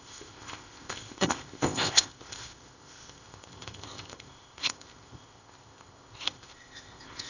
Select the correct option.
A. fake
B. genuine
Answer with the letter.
A